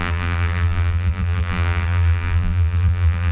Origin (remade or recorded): remade